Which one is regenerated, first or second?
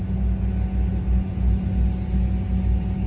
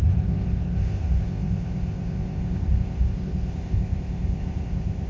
second